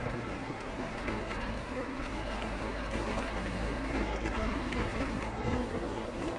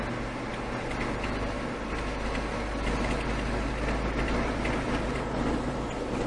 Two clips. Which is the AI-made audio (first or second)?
first